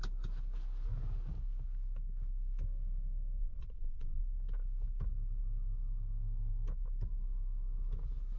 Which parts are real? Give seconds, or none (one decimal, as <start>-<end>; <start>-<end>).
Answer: 0.0-3.4; 4.2-8.4